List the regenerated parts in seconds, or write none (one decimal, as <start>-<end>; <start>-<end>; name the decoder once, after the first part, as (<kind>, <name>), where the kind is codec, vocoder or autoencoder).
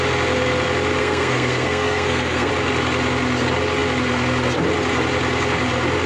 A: 1.0-2.5 (codec, SNAC)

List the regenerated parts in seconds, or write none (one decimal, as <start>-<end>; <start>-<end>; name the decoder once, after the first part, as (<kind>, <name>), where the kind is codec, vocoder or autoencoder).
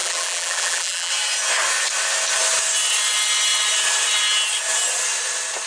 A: 0.0-1.1 (vocoder, BigVGAN v2)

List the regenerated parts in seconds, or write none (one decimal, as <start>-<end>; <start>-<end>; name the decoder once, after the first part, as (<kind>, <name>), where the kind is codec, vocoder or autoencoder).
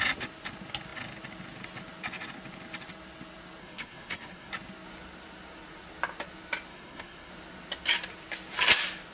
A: 3.6-4.5 (codec, SNAC); 6.7-7.3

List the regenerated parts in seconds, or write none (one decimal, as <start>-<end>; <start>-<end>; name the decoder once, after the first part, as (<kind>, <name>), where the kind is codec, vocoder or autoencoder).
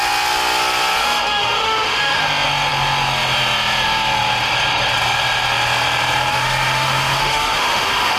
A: 1.0-2.2 (autoencoder, DAC-VAE); 6.3-8.2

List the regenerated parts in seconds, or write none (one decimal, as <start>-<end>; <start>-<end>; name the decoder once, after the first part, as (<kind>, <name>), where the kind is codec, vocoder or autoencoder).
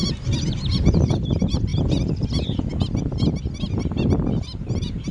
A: 0.0-1.7 (vocoder, BigVGAN v2)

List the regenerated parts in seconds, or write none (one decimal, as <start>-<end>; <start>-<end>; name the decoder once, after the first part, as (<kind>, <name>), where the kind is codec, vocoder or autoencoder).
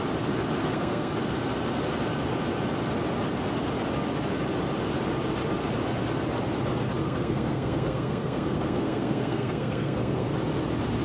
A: 0.6-1.1 (codec, SNAC); 7.0-10.3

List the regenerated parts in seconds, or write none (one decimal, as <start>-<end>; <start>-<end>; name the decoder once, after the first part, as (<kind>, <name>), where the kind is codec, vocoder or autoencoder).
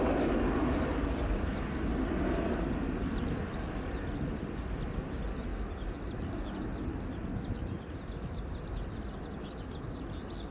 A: none